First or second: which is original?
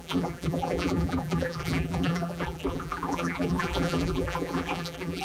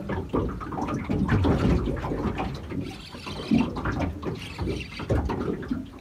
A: second